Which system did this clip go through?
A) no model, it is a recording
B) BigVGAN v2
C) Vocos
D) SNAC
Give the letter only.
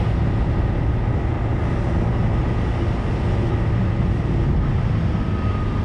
A